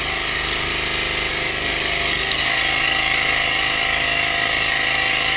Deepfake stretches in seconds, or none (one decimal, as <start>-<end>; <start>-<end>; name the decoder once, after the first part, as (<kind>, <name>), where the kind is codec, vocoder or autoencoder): 0.0-0.7 (codec, DAC); 1.3-5.4